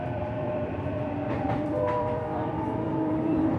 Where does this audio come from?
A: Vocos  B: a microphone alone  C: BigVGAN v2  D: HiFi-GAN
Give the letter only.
C